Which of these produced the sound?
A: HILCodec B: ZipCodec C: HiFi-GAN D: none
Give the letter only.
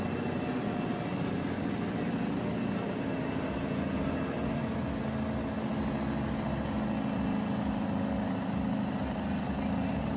D